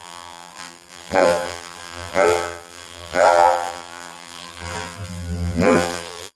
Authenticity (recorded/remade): remade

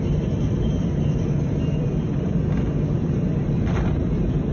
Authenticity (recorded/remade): remade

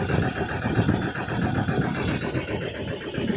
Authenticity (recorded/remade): remade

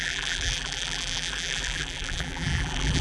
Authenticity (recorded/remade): remade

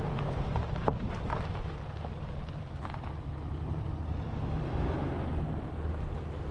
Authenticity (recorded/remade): recorded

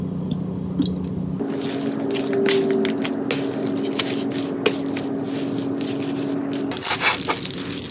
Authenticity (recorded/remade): recorded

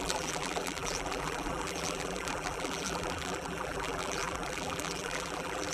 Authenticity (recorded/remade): remade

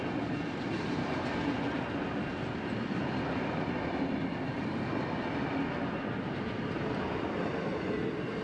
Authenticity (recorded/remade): recorded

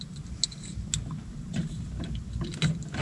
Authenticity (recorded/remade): recorded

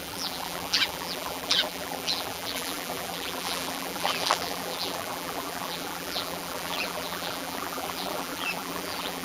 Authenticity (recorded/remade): remade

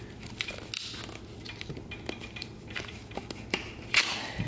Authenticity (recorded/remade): recorded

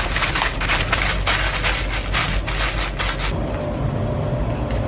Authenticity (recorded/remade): recorded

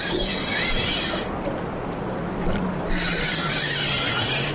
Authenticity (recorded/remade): remade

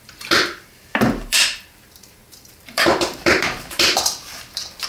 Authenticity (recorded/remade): remade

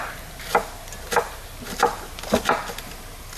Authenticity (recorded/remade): recorded